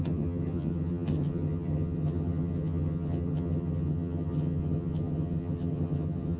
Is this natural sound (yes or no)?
no